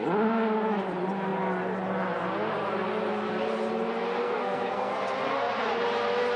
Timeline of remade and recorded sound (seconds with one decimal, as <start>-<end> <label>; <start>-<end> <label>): 0.0-4.2 recorded; 4.2-4.9 remade; 4.9-6.4 recorded